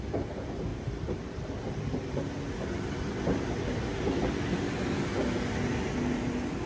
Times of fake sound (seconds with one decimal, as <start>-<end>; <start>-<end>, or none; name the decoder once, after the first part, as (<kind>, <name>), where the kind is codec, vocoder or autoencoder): 0.7-2.1 (vocoder, BigVGAN v2)